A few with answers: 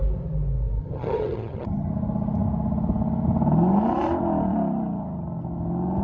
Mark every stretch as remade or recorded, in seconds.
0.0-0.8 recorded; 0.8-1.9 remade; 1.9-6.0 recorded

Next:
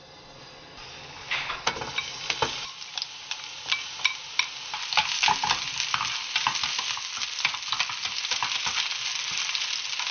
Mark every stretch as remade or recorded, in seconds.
0.0-1.0 recorded; 1.0-1.5 remade; 1.5-10.1 recorded

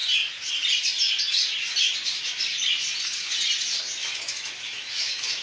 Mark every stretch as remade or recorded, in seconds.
0.0-4.0 recorded; 4.0-5.4 remade

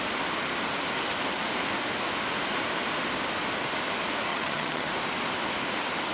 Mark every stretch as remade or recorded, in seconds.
0.0-4.3 recorded; 4.3-4.9 remade; 4.9-6.1 recorded

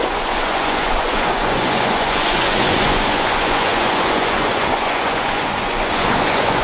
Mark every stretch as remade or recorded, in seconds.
0.0-6.6 remade